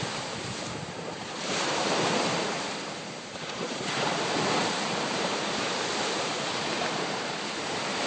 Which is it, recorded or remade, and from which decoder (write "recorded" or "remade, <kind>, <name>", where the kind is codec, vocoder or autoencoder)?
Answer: remade, vocoder, BigVGAN v2